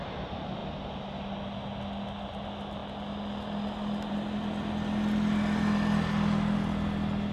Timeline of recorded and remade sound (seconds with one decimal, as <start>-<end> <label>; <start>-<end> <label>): 0.0-7.3 recorded